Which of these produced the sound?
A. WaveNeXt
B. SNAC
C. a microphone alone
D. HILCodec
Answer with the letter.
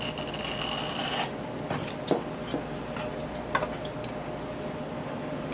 C